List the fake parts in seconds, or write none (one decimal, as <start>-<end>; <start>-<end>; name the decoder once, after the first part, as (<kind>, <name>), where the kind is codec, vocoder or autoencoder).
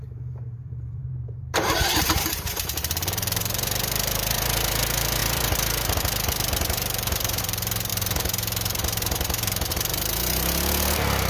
0.0-11.3 (vocoder, BigVGAN v2)